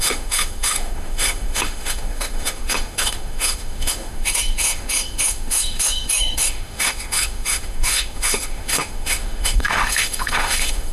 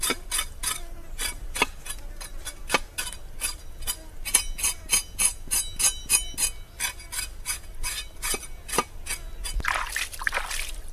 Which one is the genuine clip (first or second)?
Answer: second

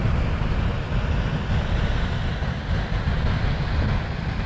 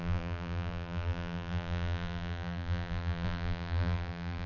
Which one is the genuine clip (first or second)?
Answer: first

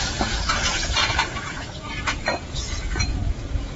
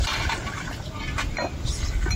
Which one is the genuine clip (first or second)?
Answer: second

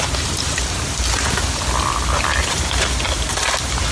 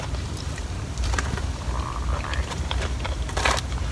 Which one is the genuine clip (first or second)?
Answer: first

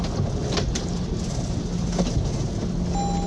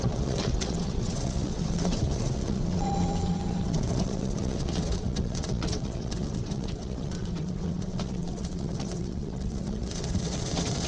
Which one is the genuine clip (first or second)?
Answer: first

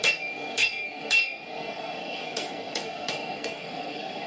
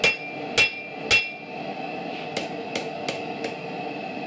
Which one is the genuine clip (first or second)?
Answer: second